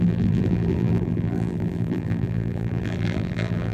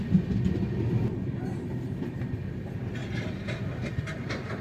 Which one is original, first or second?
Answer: second